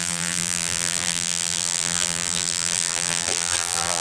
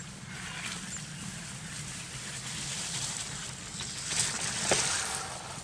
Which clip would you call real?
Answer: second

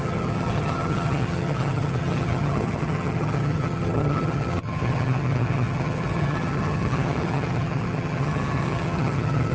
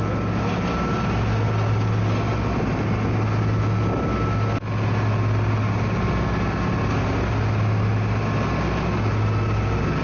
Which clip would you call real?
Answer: second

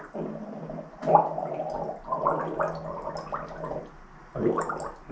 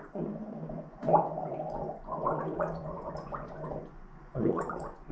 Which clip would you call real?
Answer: first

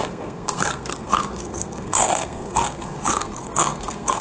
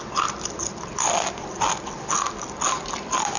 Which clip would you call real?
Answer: second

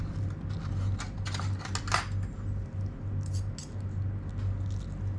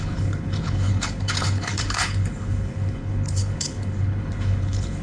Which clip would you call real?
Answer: first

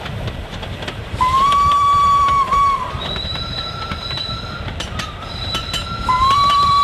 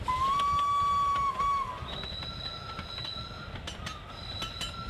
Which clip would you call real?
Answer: second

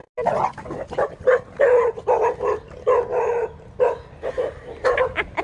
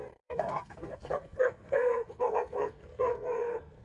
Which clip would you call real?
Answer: first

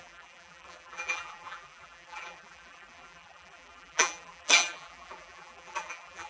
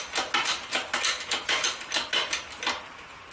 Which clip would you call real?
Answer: second